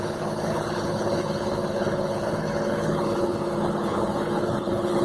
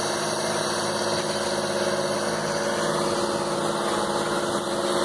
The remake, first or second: first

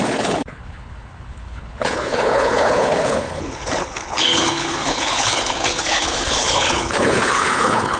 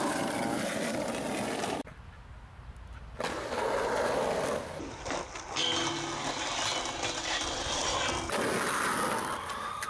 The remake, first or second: first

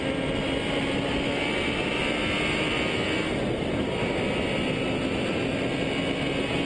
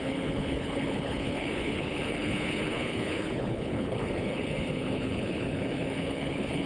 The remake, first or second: second